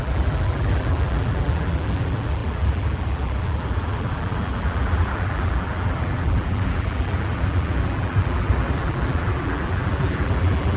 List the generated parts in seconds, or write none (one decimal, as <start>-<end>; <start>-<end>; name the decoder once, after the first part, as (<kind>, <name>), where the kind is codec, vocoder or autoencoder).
0.0-10.8 (vocoder, BigVGAN v2)